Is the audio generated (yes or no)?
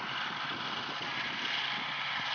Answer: no